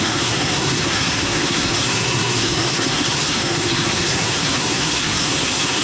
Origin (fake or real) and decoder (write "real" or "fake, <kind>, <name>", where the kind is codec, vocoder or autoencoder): fake, codec, SNAC